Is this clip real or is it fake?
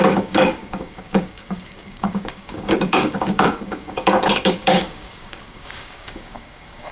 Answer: fake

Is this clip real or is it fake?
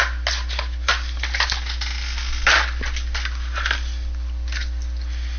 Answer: real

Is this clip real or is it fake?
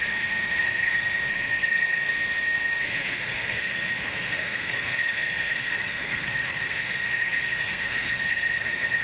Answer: fake